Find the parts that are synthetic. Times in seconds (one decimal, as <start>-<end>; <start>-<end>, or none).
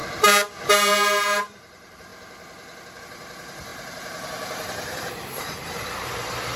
0.7-2.1; 3.0-6.6